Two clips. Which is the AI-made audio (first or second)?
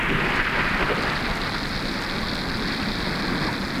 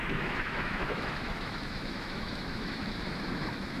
second